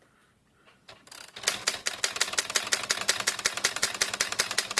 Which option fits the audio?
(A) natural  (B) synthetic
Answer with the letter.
A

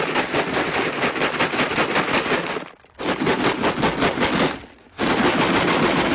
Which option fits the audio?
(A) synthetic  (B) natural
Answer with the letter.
B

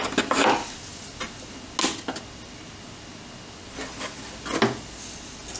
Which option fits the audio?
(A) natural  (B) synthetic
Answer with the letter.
A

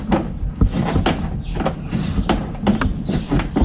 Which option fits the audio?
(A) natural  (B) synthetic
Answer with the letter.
A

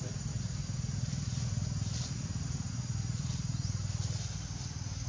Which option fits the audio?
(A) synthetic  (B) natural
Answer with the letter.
B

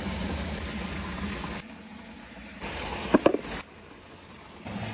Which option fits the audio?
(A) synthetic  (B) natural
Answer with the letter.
B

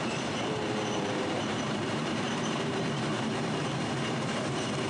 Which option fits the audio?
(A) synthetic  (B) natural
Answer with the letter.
A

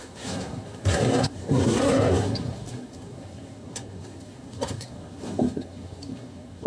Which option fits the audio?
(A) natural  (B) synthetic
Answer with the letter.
B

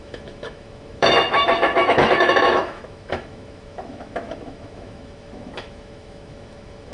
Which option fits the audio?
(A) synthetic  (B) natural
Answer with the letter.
A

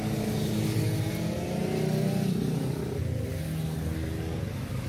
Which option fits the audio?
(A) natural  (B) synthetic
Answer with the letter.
A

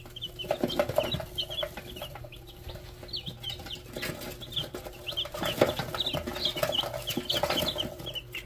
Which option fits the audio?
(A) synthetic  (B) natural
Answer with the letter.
B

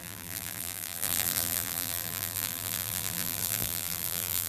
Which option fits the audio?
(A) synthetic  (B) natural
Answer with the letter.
A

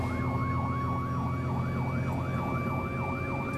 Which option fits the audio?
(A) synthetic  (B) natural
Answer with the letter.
B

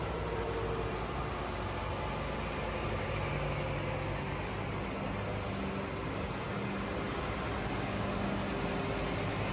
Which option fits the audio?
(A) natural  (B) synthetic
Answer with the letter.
A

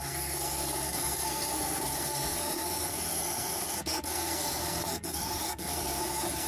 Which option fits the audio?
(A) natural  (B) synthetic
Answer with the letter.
B